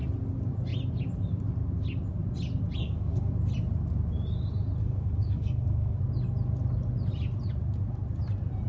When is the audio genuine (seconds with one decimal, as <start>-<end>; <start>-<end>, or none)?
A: 0.0-2.8; 3.3-4.8; 6.0-8.7